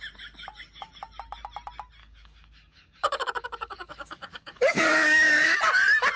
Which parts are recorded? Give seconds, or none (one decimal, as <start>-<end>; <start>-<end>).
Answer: 0.0-2.0; 5.6-6.2